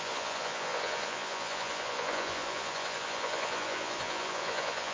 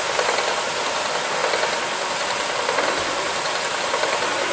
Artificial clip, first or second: first